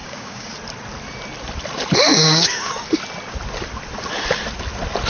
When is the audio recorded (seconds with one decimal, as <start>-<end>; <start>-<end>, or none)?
0.5-2.1; 2.7-5.1